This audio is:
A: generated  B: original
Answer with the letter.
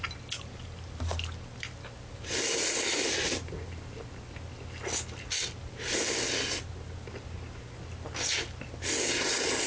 B